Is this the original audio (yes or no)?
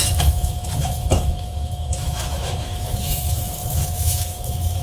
no